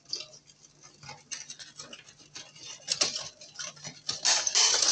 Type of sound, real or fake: real